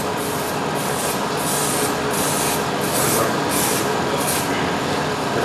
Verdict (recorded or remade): recorded